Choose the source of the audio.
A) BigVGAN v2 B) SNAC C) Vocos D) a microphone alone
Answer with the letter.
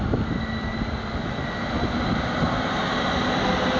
D